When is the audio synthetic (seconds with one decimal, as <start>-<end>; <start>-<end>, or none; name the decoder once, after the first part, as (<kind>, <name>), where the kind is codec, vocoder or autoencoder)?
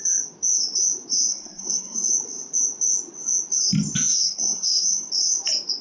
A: 1.3-2.1 (codec, SNAC); 4.1-5.1